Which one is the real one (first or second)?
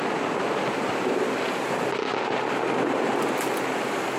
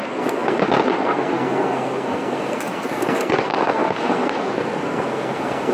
first